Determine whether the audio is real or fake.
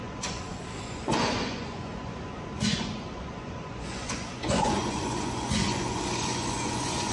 fake